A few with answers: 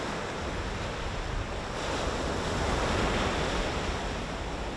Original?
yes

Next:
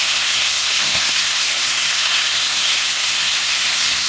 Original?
no